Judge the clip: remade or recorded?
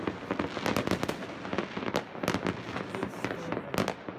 recorded